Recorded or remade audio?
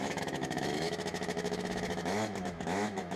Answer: remade